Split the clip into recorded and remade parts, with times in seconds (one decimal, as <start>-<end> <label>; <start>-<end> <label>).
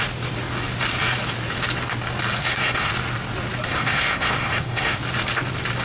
0.0-2.4 recorded; 2.4-2.9 remade; 2.9-3.7 recorded; 3.7-5.0 remade; 5.0-5.8 recorded